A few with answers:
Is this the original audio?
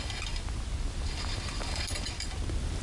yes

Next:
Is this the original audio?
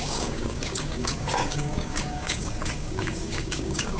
no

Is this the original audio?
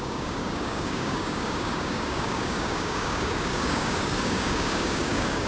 no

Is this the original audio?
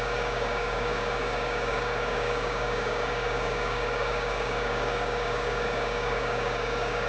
no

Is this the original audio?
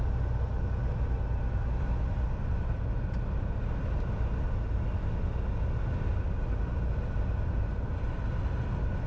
yes